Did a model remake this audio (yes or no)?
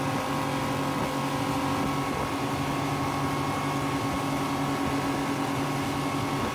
no